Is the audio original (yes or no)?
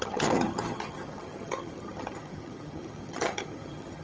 no